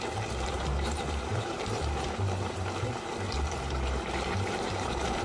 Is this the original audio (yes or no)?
no